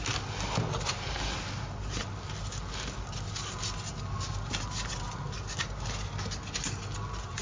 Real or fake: real